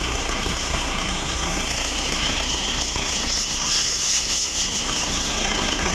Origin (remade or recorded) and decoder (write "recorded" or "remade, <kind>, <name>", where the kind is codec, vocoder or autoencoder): remade, codec, SNAC